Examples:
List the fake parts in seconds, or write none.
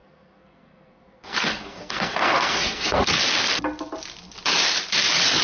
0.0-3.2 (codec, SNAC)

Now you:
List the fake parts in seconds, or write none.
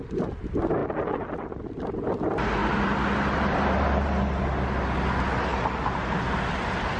none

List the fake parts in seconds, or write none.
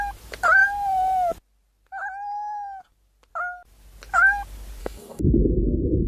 4.8-6.1 (codec, SNAC)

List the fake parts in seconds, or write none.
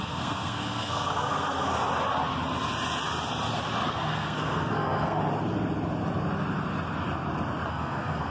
0.0-1.8 (codec, SNAC); 3.9-5.2; 7.7-8.3